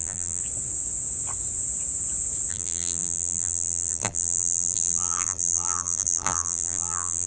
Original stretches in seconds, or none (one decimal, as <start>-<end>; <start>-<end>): 0.4-2.5